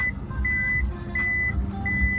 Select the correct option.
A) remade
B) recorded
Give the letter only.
B